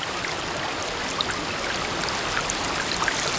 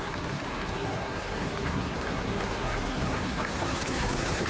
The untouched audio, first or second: first